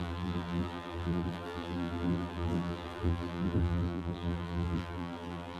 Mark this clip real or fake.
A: fake